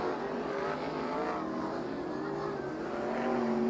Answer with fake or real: real